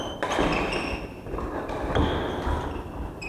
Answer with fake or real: real